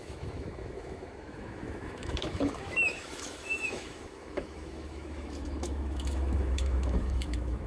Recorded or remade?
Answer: remade